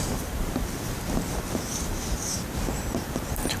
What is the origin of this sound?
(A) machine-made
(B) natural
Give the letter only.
A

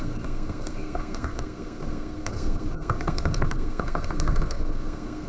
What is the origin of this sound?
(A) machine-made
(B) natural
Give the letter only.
A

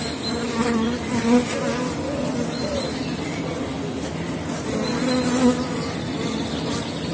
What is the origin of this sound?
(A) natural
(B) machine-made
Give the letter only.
A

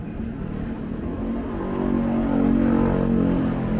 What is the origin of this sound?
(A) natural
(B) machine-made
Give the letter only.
A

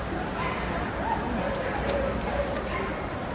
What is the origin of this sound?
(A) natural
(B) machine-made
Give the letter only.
A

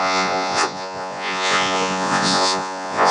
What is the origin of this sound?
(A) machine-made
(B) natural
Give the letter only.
A